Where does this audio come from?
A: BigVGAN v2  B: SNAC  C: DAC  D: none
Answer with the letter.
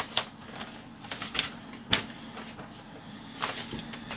D